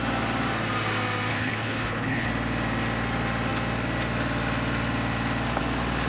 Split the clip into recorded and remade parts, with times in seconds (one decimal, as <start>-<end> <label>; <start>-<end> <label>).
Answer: 0.0-1.3 recorded; 1.3-2.3 remade; 2.3-6.1 recorded